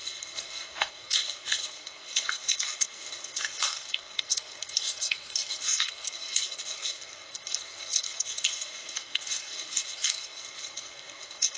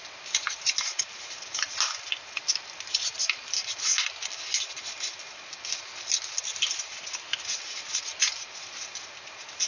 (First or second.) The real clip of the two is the second